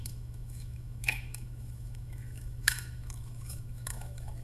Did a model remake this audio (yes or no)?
yes